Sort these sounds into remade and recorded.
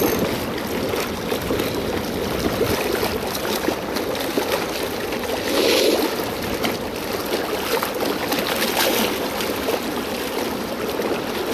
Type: recorded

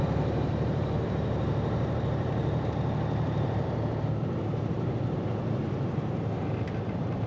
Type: remade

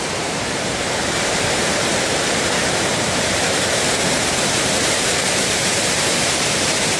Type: remade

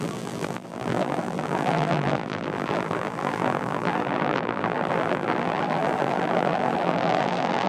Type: remade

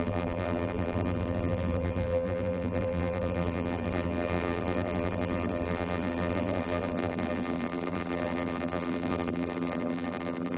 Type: remade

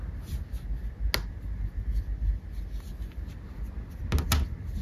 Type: recorded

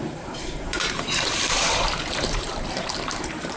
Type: remade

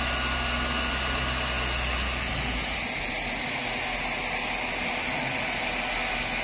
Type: recorded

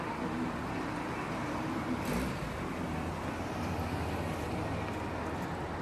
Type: recorded